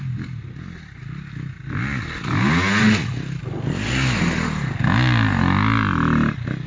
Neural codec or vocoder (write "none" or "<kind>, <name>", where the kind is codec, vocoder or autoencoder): none